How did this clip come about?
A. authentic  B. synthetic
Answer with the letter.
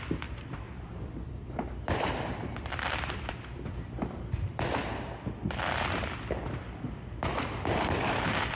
B